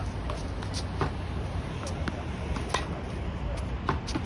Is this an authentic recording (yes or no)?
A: yes